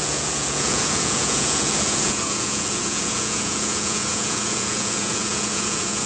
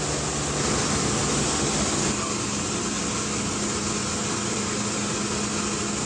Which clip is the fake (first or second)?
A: first